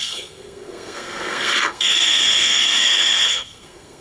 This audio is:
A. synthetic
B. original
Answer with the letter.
A